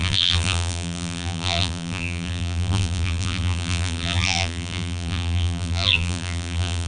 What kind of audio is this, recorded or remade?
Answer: remade